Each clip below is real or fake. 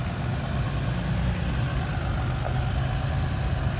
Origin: real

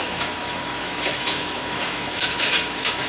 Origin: fake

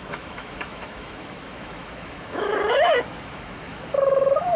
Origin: fake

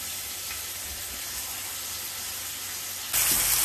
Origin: real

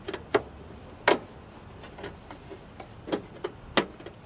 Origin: real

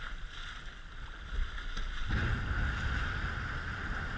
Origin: real